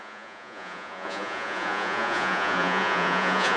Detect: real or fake fake